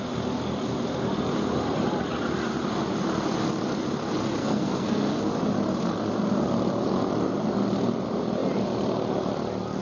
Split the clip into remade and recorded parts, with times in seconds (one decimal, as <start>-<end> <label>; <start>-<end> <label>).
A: 0.0-4.4 recorded; 4.4-5.2 remade; 5.2-9.8 recorded